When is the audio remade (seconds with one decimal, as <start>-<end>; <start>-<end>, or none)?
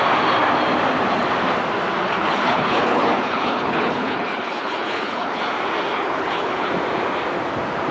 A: 2.0-5.4; 5.9-6.7